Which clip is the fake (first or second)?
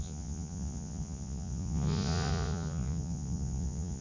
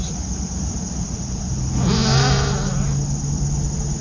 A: first